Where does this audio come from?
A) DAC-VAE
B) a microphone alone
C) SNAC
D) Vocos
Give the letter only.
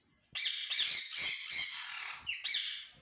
B